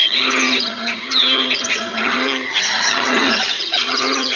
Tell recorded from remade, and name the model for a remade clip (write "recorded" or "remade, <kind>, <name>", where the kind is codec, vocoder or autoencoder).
remade, vocoder, HiFi-GAN